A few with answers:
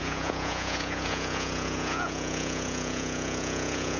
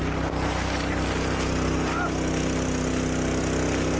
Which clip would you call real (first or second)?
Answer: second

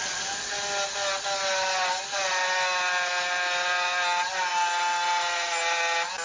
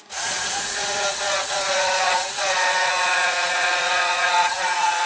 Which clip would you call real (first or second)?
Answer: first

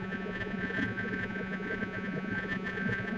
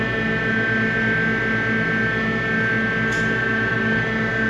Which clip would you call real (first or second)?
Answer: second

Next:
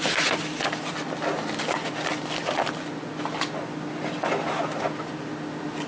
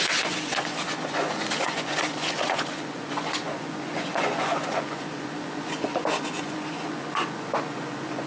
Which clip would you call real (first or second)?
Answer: first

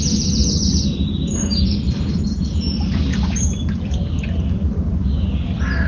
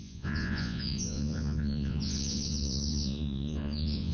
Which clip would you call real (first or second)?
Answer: first